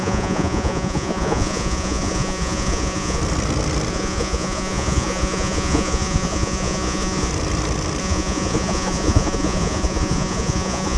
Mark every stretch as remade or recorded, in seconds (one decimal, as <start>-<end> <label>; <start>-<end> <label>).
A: 0.0-3.2 remade; 3.2-3.9 recorded; 3.9-7.3 remade; 7.3-8.0 recorded; 8.0-11.0 remade